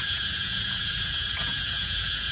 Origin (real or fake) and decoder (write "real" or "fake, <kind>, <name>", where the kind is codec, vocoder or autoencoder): fake, vocoder, Vocos